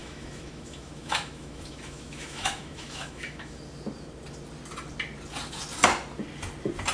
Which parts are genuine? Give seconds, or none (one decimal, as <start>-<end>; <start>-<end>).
3.6-6.9